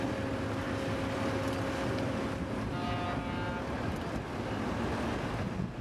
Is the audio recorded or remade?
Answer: recorded